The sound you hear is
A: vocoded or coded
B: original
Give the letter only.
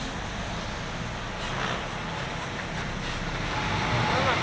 B